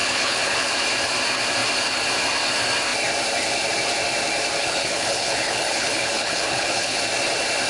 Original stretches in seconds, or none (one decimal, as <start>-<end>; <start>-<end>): 0.7-4.6; 7.0-7.7